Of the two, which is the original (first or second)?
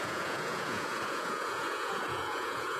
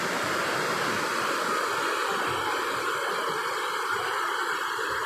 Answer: second